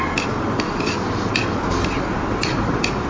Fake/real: real